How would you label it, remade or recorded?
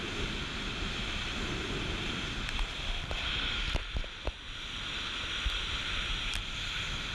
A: recorded